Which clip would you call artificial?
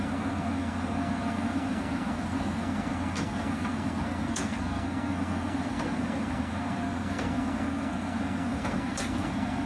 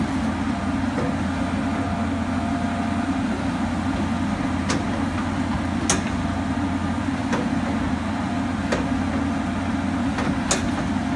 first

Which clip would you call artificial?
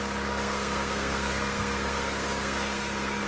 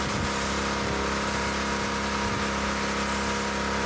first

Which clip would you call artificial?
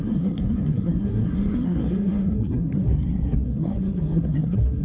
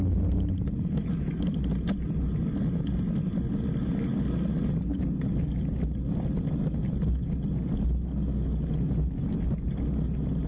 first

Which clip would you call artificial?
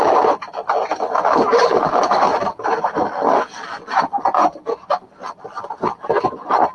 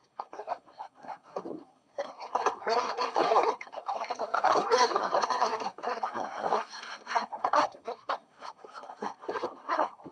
second